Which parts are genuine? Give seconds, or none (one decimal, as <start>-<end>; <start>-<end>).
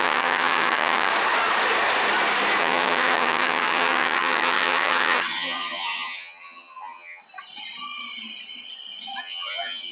1.1-2.6; 7.2-9.2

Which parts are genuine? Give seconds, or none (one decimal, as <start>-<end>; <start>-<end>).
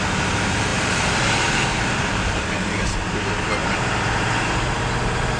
0.0-0.7; 2.8-3.6; 4.5-5.4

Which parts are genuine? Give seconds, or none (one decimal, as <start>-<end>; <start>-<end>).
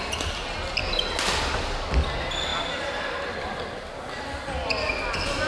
0.0-5.5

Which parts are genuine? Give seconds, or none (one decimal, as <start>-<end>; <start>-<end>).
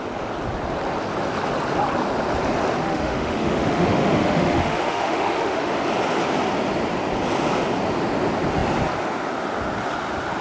0.0-2.8; 5.7-10.4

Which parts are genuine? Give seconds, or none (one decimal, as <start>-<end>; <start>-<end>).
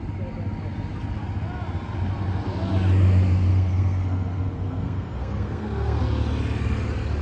0.0-3.5; 6.0-7.2